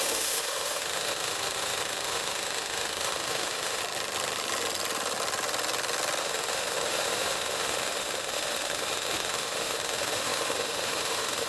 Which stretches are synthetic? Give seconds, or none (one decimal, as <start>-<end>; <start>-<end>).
0.0-3.8; 6.2-11.5